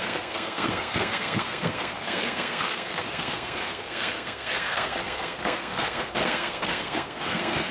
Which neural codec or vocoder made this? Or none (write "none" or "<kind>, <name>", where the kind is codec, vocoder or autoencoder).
codec, SNAC